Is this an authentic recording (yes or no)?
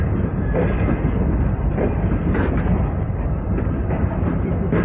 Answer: no